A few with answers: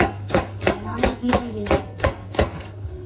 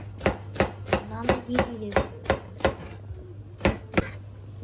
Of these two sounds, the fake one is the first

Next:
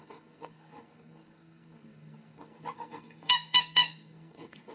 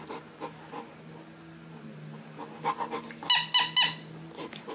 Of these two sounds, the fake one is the first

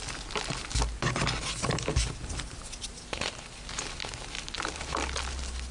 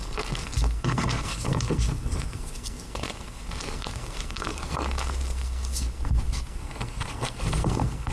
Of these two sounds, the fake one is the second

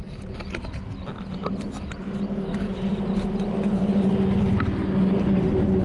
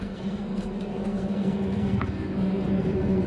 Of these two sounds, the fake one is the second